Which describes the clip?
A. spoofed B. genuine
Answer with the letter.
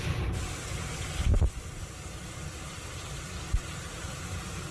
B